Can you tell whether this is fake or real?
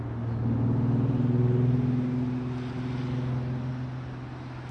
real